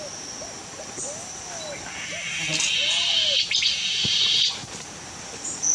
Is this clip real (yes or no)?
yes